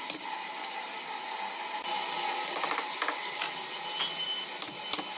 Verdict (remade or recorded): recorded